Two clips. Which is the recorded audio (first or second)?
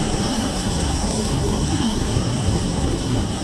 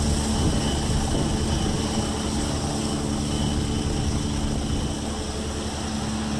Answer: second